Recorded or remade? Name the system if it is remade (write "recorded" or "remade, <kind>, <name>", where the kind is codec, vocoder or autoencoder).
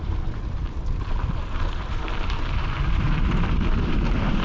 remade, vocoder, BigVGAN v2